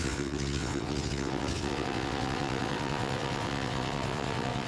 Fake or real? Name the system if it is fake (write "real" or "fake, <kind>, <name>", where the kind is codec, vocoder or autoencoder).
fake, vocoder, WaveNeXt